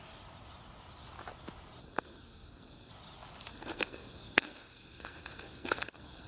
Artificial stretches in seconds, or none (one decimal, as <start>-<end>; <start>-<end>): 1.8-2.9; 3.5-6.3